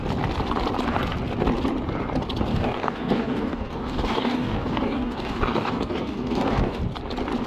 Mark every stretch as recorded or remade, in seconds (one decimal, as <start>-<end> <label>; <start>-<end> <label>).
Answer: 0.0-2.5 recorded; 2.5-6.8 remade; 6.8-7.5 recorded